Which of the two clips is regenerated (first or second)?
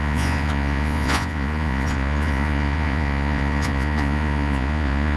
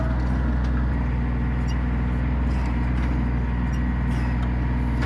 first